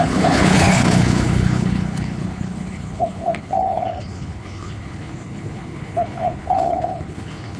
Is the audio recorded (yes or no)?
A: no